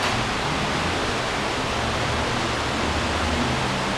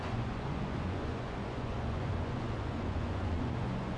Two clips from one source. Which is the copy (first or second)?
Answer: second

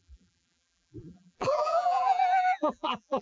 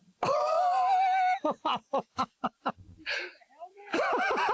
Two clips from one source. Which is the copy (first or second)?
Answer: first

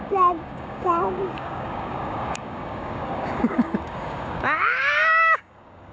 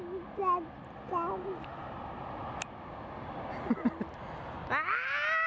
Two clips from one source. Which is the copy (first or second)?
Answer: first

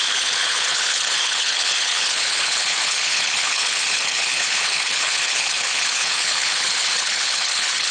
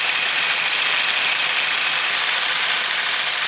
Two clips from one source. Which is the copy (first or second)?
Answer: first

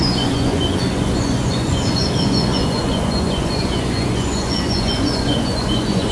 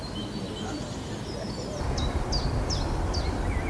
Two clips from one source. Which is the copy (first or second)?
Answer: first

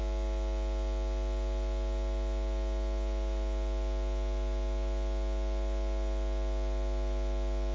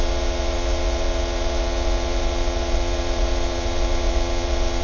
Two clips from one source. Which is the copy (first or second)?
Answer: second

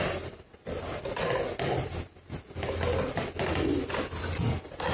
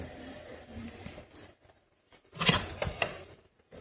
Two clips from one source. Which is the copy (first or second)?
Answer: second